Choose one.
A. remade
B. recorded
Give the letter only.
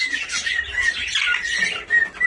B